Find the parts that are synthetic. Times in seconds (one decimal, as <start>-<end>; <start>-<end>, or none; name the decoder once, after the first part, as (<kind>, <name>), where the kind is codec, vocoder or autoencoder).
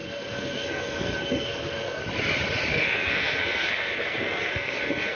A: 0.0-2.0 (codec, SNAC); 2.7-5.2